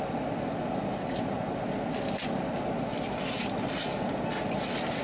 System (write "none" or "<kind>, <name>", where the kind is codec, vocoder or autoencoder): none